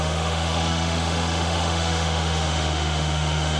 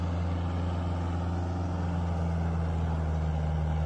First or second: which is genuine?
second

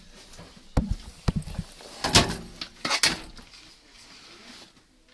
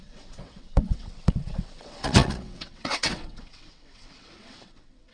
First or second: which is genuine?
first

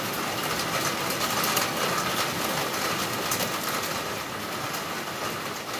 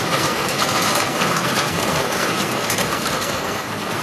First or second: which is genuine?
first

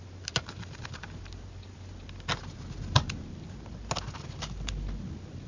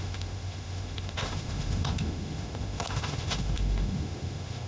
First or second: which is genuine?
first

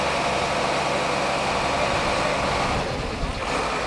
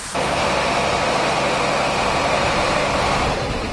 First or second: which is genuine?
first